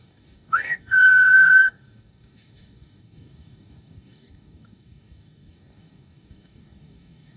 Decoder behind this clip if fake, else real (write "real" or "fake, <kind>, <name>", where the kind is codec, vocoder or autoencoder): fake, codec, DAC